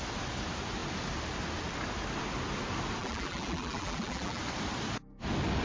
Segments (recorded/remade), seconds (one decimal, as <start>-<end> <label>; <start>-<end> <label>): 0.0-3.0 recorded; 3.0-4.4 remade; 4.4-5.6 recorded